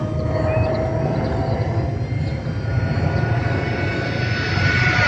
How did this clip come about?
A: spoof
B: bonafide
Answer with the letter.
B